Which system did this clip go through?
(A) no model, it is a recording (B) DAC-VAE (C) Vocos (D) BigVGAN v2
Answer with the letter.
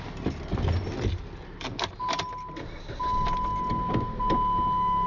A